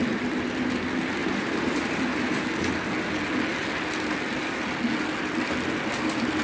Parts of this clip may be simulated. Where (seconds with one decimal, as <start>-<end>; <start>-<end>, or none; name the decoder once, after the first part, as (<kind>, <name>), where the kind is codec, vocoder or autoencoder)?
1.2-2.5 (vocoder, BigVGAN v2)